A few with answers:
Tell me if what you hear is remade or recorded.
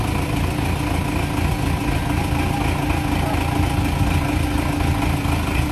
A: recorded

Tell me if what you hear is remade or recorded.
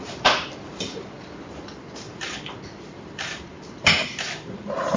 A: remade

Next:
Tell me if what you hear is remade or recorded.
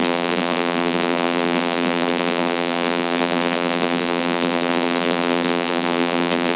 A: remade